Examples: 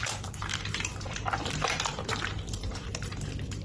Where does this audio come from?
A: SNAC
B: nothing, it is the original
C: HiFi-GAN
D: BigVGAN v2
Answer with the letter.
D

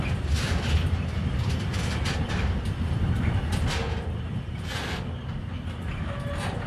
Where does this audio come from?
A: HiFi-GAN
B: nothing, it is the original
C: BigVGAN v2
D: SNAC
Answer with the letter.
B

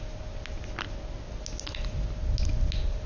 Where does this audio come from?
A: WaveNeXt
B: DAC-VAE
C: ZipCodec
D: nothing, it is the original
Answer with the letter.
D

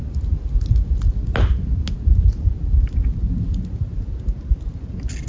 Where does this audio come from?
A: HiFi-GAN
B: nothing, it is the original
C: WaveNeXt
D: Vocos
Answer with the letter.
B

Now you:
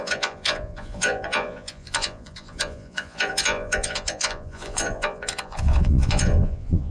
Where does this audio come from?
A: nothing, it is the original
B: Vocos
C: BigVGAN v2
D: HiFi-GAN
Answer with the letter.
B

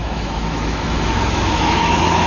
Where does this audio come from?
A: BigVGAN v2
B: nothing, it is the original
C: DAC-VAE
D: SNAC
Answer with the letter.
C